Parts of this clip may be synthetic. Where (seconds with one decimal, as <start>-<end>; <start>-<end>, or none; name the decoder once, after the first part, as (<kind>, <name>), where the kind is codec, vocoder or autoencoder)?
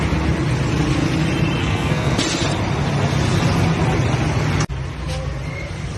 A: 1.6-2.2 (codec, SNAC)